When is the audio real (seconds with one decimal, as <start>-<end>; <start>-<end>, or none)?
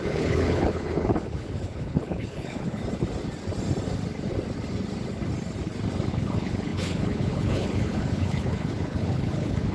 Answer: 2.8-6.1